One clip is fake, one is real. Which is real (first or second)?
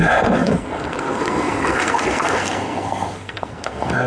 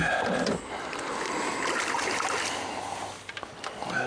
second